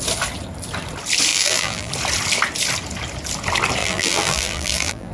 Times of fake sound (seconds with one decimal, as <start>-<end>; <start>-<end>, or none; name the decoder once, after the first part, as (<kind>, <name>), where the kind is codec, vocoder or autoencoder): 1.3-1.9 (vocoder, BigVGAN v2); 3.8-5.1